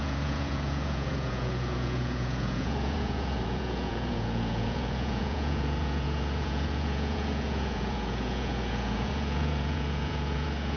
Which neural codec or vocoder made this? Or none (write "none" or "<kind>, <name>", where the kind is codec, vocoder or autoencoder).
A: vocoder, Vocos